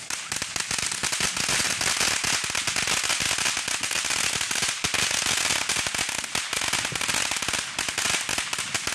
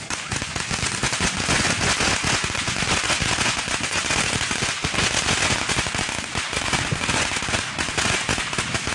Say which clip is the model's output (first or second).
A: second